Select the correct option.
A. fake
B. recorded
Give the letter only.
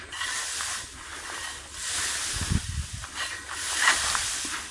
B